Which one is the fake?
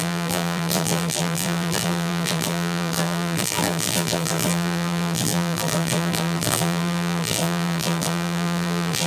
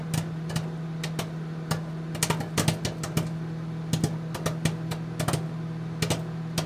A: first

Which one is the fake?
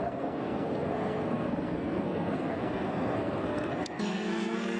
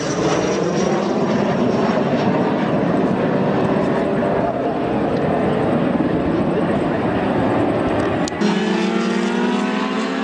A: first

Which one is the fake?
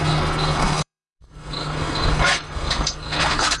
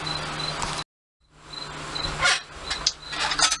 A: first